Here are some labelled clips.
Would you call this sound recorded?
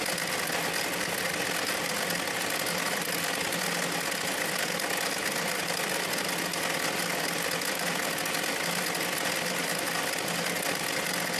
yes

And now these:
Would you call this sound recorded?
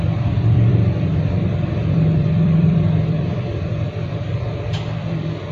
no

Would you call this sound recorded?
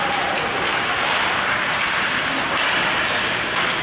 yes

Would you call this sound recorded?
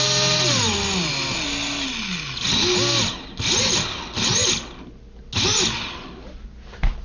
yes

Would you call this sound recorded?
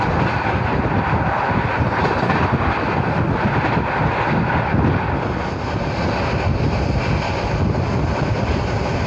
yes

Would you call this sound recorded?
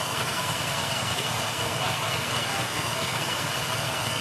no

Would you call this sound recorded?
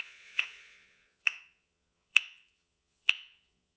no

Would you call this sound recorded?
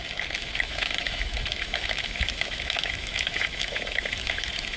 no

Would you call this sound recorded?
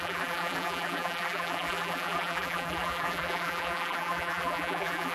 no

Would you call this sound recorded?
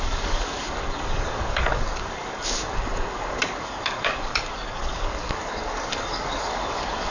no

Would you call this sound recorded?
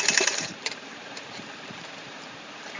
no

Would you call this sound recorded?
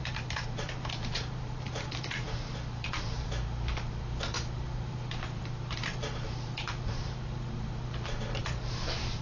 no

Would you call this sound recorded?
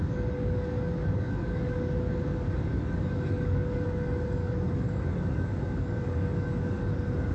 no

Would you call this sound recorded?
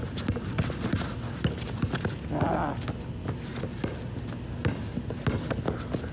yes